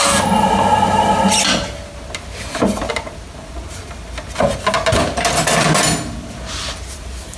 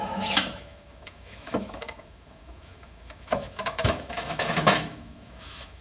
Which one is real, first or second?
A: first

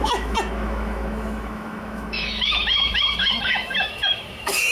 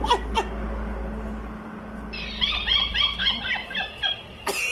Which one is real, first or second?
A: second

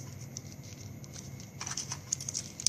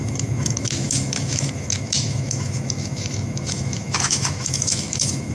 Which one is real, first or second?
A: first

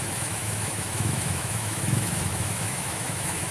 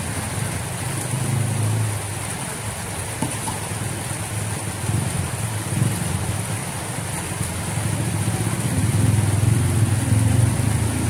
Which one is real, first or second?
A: second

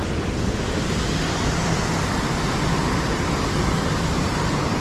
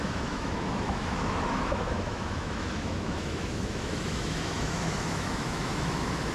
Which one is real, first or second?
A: first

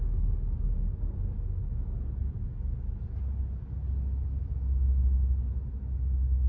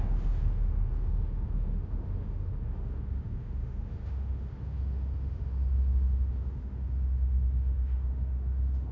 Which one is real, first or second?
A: first